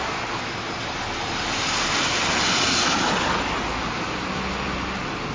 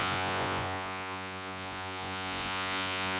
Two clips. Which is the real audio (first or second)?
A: first